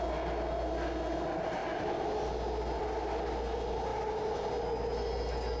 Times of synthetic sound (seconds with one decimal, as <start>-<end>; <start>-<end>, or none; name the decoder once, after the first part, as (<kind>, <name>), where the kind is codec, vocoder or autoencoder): none